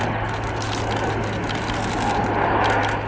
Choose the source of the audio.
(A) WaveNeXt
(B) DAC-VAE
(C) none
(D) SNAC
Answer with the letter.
C